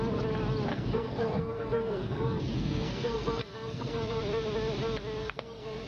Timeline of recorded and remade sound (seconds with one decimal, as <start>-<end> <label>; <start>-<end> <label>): 0.0-0.7 recorded; 0.7-4.2 remade; 4.2-5.2 recorded; 5.2-5.9 remade